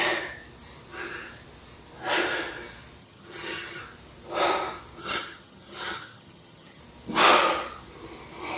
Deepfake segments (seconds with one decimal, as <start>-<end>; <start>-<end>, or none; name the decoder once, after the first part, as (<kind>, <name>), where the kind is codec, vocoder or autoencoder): 3.0-3.8 (vocoder, HiFi-GAN); 5.0-6.8